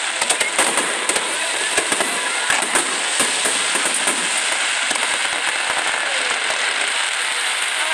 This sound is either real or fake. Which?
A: real